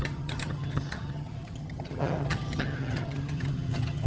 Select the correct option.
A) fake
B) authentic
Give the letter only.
A